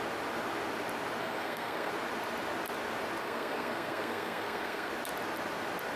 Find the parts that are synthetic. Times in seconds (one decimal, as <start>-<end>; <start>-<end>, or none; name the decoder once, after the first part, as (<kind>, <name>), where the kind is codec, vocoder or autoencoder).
1.2-1.9 (codec, SNAC); 3.2-4.9